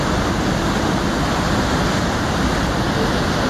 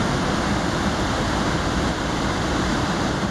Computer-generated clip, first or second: second